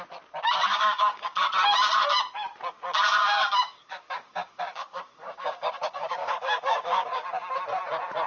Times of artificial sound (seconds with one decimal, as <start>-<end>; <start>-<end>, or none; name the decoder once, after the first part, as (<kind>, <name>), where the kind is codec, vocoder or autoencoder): 0.7-1.5 (codec, DAC); 3.2-7.5

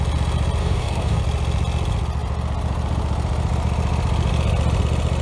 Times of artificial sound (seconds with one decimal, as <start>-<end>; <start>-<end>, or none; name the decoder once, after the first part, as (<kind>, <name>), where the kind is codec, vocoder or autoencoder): 0.6-1.2 (codec, DAC)

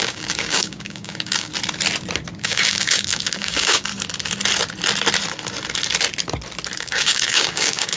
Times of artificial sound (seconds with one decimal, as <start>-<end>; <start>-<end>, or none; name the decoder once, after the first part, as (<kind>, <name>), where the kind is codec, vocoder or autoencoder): 0.0-1.5 (codec, DAC); 2.4-3.9; 6.8-8.0

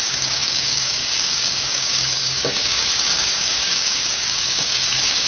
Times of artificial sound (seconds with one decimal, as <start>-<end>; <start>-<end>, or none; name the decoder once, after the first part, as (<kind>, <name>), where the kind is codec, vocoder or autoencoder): 0.0-5.3 (codec, DAC)

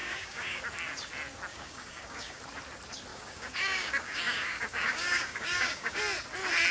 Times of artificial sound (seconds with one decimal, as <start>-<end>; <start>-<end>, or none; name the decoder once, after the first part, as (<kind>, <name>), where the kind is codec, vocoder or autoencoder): 0.0-0.6 (codec, DAC); 1.5-2.4; 3.1-6.0

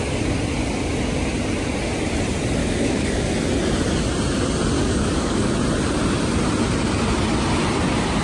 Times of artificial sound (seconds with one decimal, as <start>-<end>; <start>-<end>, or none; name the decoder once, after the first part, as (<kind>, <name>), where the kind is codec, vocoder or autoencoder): 2.6-3.3 (codec, DAC); 4.8-5.5

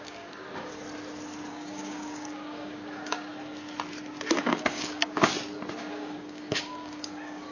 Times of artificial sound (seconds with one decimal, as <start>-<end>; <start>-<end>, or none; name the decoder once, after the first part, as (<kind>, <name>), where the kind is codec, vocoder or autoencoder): 0.0-0.7 (codec, DAC); 1.5-3.3; 4.4-5.3; 5.8-7.5

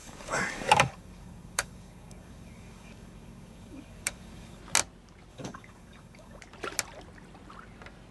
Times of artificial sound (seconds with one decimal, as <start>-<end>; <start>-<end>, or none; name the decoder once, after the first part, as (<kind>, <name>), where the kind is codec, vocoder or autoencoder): 0.0-4.6 (codec, DAC); 5.3-6.4